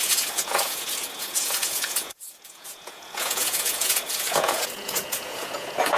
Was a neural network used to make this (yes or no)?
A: yes